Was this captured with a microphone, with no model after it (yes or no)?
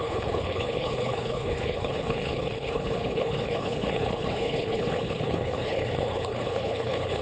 no